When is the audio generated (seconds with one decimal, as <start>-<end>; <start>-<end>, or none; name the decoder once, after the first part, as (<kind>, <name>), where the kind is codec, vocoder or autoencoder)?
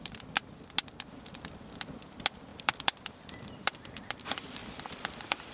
2.5-4.7 (vocoder, BigVGAN v2)